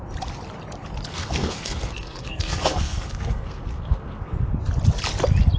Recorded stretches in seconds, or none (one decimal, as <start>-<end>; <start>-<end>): 0.0-1.1; 4.5-5.6

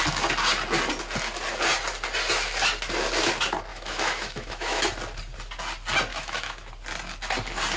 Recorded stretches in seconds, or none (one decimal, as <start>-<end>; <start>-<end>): 0.0-3.7; 4.8-6.1; 6.7-7.8

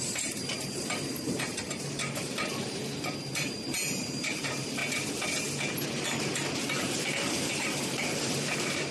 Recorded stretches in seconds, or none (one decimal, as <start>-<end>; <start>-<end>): 4.8-6.5

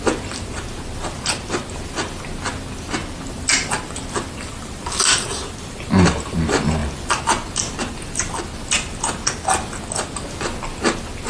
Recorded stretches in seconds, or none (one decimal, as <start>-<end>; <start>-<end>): 0.0-11.3